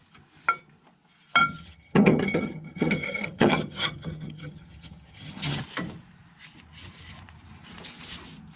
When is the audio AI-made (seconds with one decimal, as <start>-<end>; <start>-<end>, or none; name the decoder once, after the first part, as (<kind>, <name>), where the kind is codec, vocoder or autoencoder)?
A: 1.4-5.6 (vocoder, HiFi-GAN)

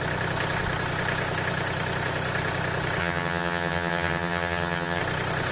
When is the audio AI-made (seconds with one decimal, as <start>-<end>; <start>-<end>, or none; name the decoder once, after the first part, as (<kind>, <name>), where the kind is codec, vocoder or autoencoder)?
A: 3.0-5.0 (vocoder, HiFi-GAN)

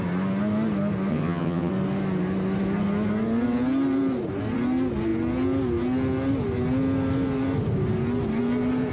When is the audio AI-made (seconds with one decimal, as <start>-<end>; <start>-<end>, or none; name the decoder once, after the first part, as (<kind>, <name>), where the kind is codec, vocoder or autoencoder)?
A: 1.1-1.7 (vocoder, HiFi-GAN)

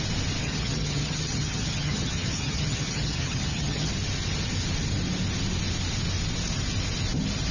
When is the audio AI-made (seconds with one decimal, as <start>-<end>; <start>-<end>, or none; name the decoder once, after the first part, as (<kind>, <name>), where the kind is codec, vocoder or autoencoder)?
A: 0.4-3.9 (vocoder, HiFi-GAN)

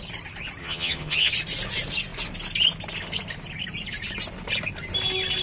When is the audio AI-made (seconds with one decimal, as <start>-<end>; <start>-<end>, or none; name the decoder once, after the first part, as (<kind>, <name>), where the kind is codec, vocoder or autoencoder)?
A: 0.6-1.3 (vocoder, HiFi-GAN)

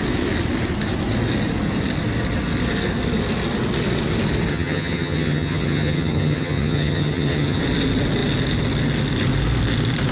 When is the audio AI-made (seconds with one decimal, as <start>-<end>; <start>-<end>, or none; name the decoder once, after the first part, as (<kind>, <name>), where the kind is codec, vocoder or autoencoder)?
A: 4.5-7.6 (vocoder, HiFi-GAN)

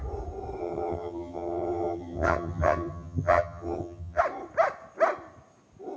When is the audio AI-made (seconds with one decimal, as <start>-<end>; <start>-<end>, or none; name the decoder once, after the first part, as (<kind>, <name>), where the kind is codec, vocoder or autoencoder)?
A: 0.6-4.2 (vocoder, HiFi-GAN)

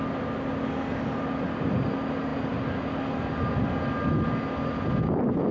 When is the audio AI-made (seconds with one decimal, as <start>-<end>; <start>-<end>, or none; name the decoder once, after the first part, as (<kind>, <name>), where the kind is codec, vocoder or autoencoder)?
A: none